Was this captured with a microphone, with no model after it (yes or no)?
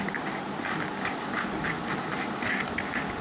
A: yes